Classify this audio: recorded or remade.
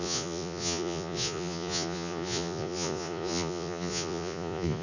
remade